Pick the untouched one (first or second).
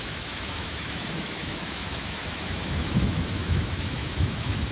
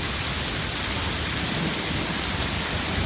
second